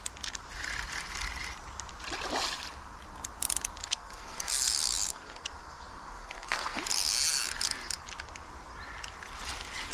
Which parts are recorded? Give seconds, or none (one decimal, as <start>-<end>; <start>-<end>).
0.0-3.8; 4.6-5.1; 6.8-9.9